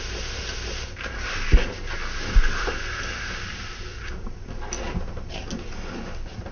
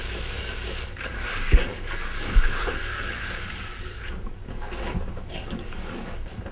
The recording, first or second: first